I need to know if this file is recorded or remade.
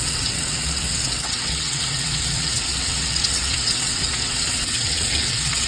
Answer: remade